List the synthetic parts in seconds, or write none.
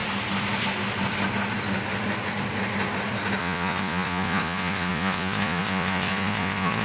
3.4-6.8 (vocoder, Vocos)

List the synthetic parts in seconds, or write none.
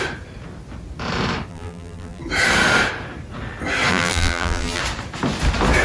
1.5-2.2 (vocoder, BigVGAN v2); 3.9-4.8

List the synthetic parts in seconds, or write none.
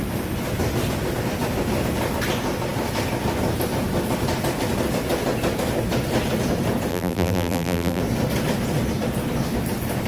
6.9-8.0 (vocoder, BigVGAN v2)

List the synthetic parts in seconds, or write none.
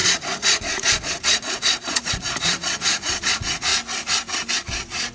0.0-3.7 (vocoder, Vocos); 4.5-5.1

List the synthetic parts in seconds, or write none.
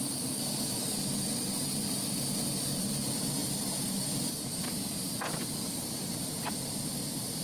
none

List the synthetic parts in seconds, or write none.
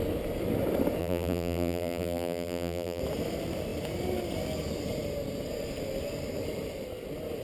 1.0-3.0 (vocoder, BigVGAN v2)